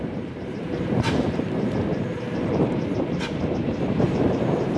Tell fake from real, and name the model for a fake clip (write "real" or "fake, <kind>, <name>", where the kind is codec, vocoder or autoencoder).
fake, vocoder, BigVGAN v2